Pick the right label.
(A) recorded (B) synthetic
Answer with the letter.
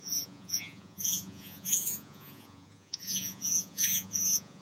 B